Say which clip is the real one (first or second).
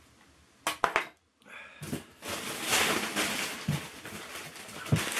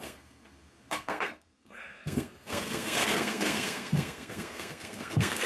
first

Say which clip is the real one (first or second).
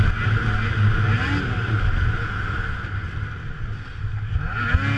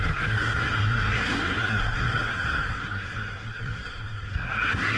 first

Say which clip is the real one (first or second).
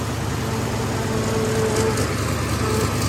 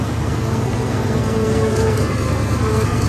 first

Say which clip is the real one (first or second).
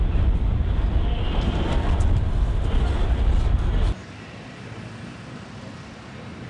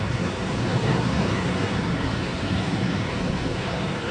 first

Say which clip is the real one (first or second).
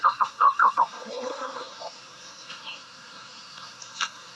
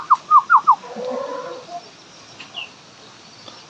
second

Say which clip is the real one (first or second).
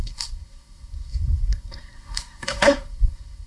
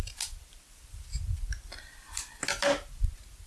second